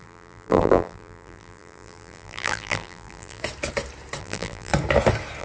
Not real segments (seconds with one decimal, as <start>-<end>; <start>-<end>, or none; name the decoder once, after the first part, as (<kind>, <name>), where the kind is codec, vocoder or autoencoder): 0.0-3.4 (vocoder, BigVGAN v2); 4.2-4.7